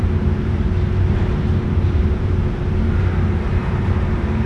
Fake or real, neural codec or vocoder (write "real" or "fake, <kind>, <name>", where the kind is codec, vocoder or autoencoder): fake, vocoder, BigVGAN v2